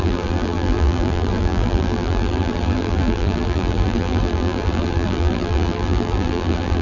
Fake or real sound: fake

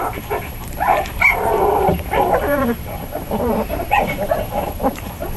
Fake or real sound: fake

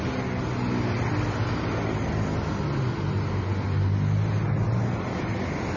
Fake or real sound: real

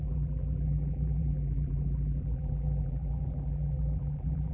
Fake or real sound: fake